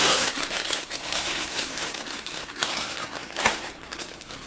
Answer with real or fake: fake